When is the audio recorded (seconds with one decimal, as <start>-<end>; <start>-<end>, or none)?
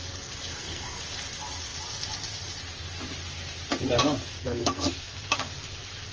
0.0-0.5; 1.0-4.3; 5.5-6.1